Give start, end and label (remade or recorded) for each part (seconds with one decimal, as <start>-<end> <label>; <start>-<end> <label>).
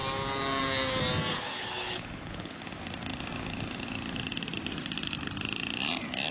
0.0-1.3 recorded; 1.3-2.6 remade; 2.6-6.3 recorded